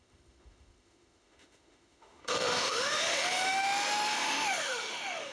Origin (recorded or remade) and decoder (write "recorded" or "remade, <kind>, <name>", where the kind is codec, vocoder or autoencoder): remade, autoencoder, DAC-VAE